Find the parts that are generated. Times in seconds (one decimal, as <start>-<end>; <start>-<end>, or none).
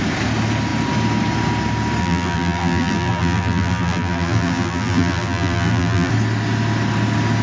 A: 2.0-6.1